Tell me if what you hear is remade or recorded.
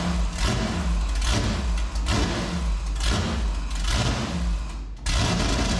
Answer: recorded